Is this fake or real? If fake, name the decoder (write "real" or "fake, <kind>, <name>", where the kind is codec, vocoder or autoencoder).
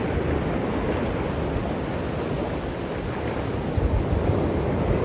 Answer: real